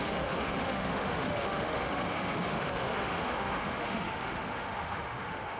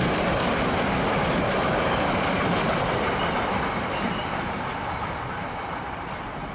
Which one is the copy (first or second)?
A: first